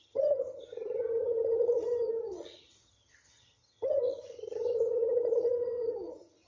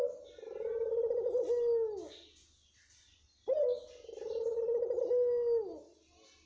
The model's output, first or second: first